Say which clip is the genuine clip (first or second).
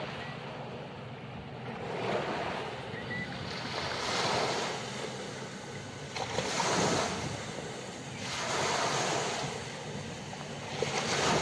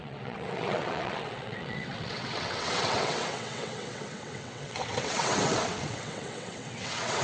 first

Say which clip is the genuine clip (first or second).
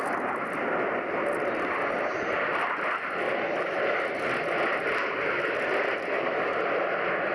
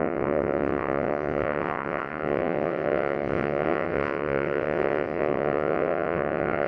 first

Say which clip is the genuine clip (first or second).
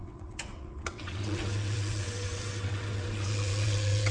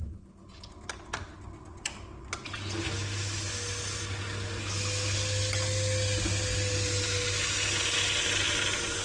second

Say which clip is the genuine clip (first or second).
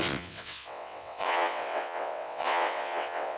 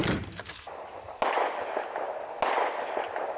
second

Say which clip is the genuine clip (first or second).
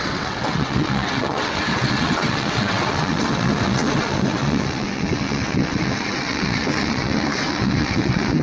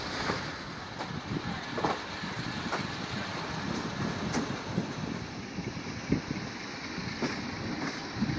second